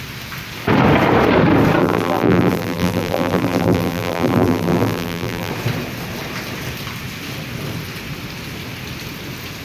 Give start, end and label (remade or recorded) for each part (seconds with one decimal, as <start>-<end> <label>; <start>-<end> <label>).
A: 0.0-1.8 recorded; 1.8-5.5 remade; 5.5-9.6 recorded